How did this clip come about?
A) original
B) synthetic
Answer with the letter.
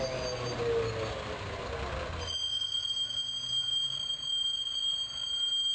A